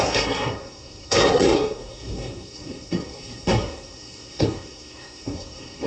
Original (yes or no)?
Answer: no